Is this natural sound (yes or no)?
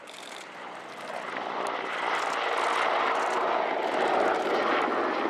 yes